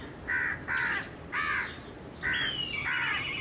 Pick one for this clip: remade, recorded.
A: recorded